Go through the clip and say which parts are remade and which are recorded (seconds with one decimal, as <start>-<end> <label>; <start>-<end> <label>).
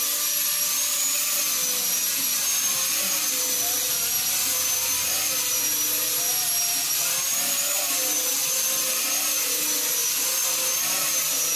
0.0-11.6 recorded